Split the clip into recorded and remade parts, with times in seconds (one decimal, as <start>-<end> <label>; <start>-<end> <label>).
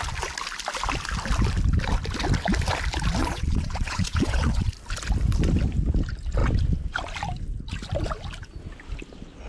0.0-3.2 recorded; 3.2-4.7 remade; 4.7-9.5 recorded